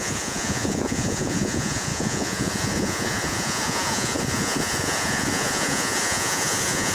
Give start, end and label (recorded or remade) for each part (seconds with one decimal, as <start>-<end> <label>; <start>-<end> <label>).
0.0-6.9 remade